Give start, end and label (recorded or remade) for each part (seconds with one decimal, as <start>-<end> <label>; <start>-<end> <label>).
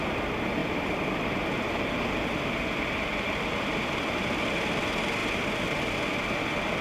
0.0-6.8 recorded